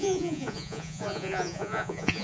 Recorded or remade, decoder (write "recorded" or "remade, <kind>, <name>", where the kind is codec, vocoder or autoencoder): remade, vocoder, Vocos